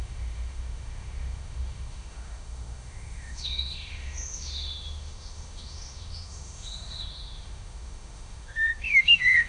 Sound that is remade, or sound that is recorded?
remade